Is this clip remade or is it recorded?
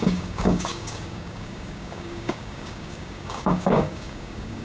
remade